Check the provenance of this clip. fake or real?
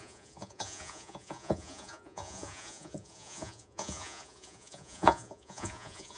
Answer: fake